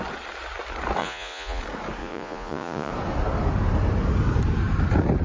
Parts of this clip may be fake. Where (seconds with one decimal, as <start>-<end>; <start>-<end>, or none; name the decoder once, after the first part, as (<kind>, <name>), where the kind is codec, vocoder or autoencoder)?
1.0-1.6 (vocoder, Vocos); 2.0-2.9